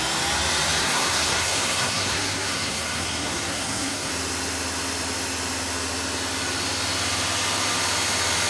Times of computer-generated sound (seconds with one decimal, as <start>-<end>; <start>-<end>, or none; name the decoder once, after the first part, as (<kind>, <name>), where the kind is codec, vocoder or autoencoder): 0.8-4.1 (codec, SNAC)